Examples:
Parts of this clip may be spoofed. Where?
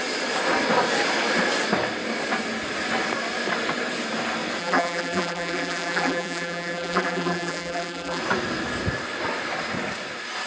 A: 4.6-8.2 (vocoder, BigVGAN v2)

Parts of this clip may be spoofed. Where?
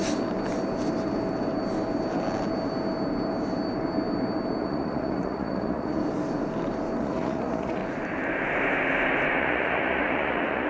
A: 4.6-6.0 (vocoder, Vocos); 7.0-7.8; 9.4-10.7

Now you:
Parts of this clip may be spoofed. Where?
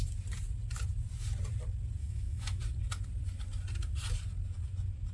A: 2.0-2.6 (autoencoder, DAC-VAE)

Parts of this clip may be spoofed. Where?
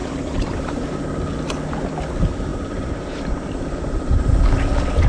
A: 0.0-1.0 (vocoder, BigVGAN v2); 2.5-4.3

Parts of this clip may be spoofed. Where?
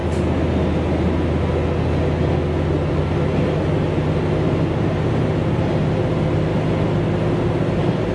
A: none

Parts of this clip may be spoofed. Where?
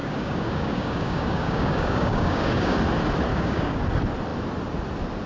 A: 0.0-2.8 (codec, DAC); 3.3-3.8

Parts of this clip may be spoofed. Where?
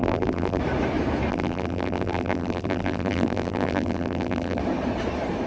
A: 0.0-0.6 (vocoder, BigVGAN v2); 1.3-4.6